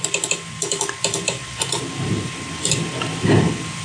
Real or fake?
real